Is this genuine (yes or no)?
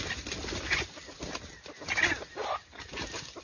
yes